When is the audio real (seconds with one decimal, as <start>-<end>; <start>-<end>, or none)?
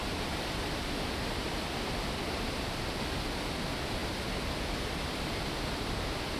3.5-4.0; 4.5-6.4